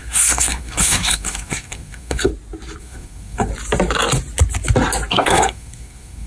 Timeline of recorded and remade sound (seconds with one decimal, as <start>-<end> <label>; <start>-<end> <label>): 0.0-2.3 remade; 2.3-2.8 recorded; 2.8-3.5 remade; 3.5-5.1 recorded; 5.1-6.3 remade